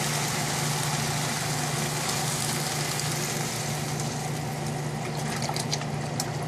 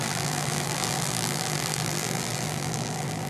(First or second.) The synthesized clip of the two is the second